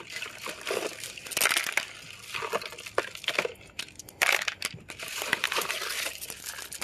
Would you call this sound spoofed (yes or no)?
no